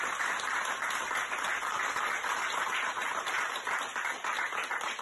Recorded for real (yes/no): no